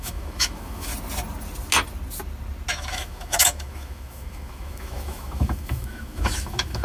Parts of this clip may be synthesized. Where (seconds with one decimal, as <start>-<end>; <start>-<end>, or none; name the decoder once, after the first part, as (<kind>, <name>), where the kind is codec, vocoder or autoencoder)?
0.0-0.9 (autoencoder, DAC-VAE); 2.7-6.8